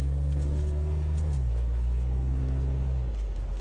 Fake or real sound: fake